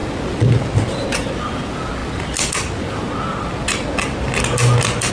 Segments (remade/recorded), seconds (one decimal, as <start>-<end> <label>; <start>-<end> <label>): 0.0-5.1 recorded

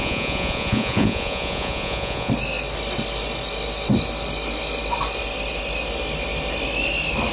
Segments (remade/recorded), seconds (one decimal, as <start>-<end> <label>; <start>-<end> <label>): 0.0-2.3 remade; 2.3-7.3 recorded

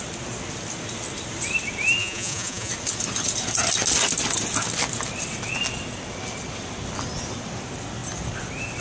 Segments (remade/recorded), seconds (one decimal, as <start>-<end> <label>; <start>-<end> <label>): 0.0-2.0 recorded; 2.0-2.7 remade; 2.7-8.8 recorded

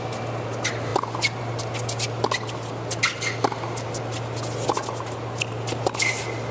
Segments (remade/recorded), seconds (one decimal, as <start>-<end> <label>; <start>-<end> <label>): 0.0-6.5 recorded

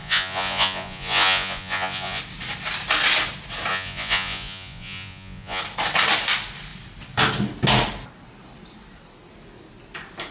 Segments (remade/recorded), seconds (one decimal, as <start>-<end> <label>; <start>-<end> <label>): 0.0-2.2 remade; 2.2-3.7 recorded; 3.7-5.6 remade; 5.6-10.3 recorded

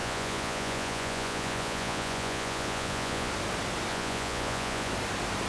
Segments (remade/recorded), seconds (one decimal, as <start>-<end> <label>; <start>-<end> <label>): 0.0-3.3 remade; 3.3-3.9 recorded; 3.9-4.9 remade; 4.9-5.5 recorded

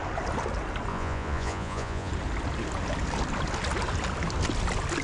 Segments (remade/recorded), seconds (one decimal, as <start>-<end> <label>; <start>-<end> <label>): 0.0-0.9 recorded; 0.9-2.1 remade; 2.1-5.0 recorded

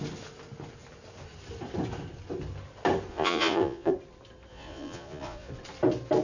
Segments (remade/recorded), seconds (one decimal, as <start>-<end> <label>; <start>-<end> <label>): 0.0-3.1 recorded; 3.1-3.9 remade; 3.9-4.5 recorded; 4.5-5.5 remade; 5.5-6.2 recorded